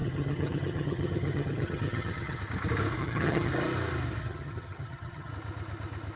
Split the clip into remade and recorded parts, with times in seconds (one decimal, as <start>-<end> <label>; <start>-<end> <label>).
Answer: 0.0-2.4 remade; 2.4-3.0 recorded; 3.0-3.5 remade; 3.5-4.2 recorded; 4.2-5.3 remade; 5.3-6.2 recorded